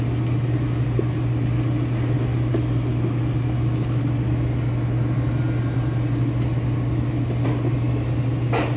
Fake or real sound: real